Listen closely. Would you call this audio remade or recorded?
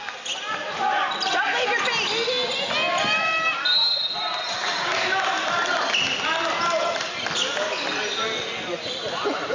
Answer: recorded